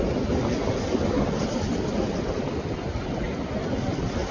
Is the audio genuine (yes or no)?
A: yes